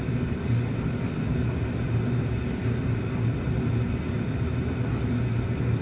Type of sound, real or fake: real